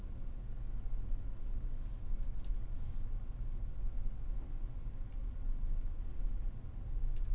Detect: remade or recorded recorded